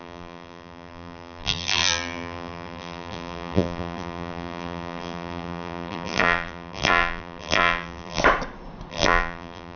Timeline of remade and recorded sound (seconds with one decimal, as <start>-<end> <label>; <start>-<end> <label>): 0.0-8.2 remade; 8.2-8.9 recorded; 8.9-9.8 remade

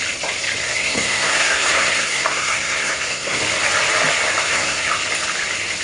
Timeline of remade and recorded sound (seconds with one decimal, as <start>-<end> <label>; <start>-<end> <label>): 0.0-0.6 recorded; 0.6-3.4 remade; 3.4-4.4 recorded; 4.4-4.9 remade; 4.9-5.8 recorded

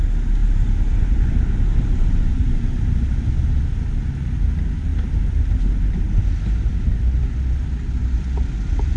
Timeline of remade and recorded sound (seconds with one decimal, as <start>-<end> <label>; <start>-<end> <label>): 0.0-0.4 recorded; 0.4-3.6 remade; 3.6-9.0 recorded

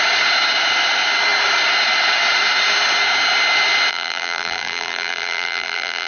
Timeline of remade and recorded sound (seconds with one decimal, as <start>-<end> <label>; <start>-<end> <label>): 0.0-3.9 recorded; 3.9-6.1 remade

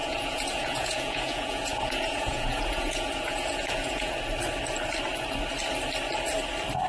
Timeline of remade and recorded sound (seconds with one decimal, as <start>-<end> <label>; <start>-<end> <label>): 0.0-4.1 remade; 4.1-6.9 recorded

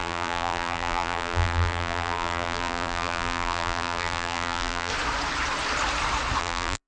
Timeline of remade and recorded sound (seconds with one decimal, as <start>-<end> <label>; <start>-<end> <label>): 0.0-4.9 remade; 4.9-6.4 recorded; 6.4-6.9 remade

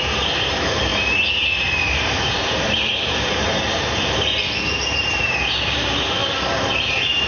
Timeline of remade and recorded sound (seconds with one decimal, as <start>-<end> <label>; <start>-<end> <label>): 0.0-6.2 remade; 6.2-6.7 recorded; 6.7-7.3 remade

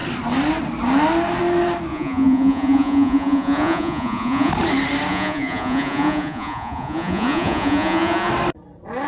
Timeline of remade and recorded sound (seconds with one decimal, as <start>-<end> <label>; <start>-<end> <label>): 0.0-1.9 recorded; 1.9-4.5 remade; 4.5-5.1 recorded; 5.1-8.3 remade; 8.3-9.1 recorded